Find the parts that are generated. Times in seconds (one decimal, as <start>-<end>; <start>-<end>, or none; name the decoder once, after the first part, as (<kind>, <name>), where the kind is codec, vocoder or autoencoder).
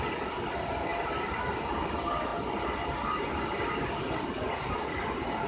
none